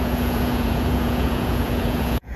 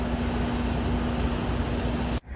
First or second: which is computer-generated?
first